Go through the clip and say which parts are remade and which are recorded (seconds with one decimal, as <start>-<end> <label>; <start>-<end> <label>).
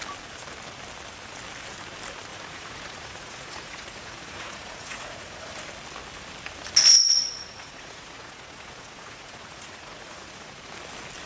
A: 0.0-2.3 recorded; 2.3-5.5 remade; 5.5-7.0 recorded; 7.0-10.7 remade; 10.7-11.3 recorded